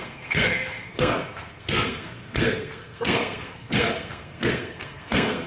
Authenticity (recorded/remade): remade